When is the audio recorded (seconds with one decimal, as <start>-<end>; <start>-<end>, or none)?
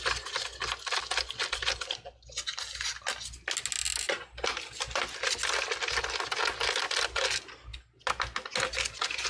0.0-9.3